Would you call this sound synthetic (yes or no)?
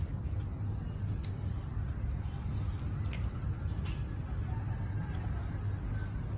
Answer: no